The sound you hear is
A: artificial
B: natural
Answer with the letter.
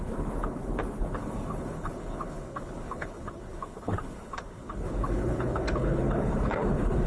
A